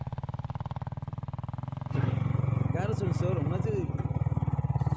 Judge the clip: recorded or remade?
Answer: recorded